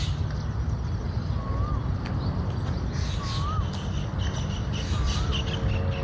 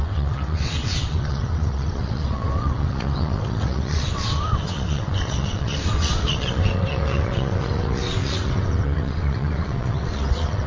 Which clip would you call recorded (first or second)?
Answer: first